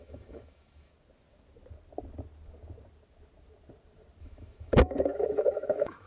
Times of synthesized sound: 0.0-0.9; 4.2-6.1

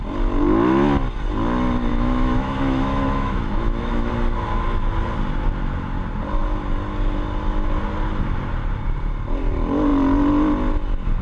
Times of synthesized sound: 1.9-4.1

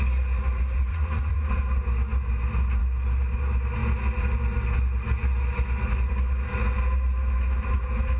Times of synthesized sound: 0.9-1.5

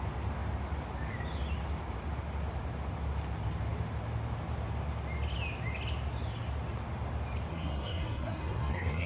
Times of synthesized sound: 7.5-9.1

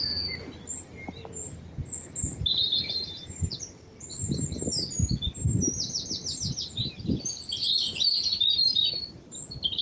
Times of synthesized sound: 1.1-1.8; 2.6-4.2; 7.2-9.8

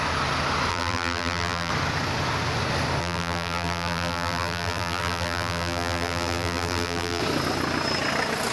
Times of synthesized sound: 0.7-1.7; 3.0-7.2